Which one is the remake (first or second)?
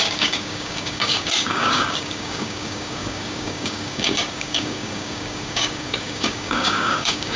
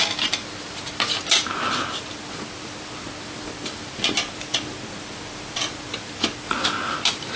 first